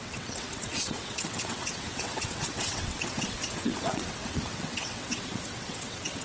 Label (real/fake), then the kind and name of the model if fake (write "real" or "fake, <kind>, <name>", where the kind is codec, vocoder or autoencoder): fake, vocoder, WaveNeXt